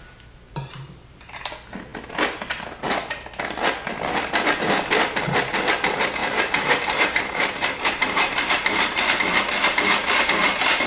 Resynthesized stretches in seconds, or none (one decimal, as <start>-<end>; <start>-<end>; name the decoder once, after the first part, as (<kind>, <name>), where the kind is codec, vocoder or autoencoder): 0.7-1.5 (vocoder, BigVGAN v2); 6.2-9.2